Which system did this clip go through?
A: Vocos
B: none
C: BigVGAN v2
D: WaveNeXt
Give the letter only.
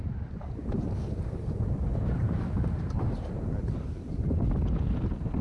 B